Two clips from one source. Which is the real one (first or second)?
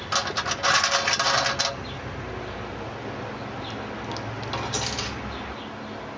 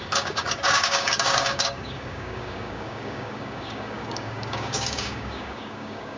first